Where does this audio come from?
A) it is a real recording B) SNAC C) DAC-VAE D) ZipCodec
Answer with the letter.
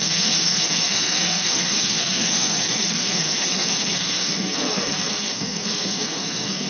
B